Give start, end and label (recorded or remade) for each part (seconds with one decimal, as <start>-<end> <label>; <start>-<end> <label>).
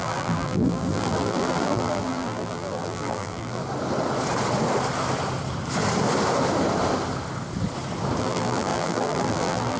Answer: 0.0-3.6 remade; 3.6-8.2 recorded; 8.2-9.8 remade